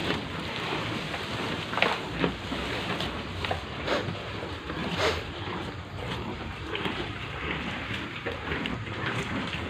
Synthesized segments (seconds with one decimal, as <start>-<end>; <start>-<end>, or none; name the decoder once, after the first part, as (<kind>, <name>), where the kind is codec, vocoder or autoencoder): 0.0-9.7 (vocoder, BigVGAN v2)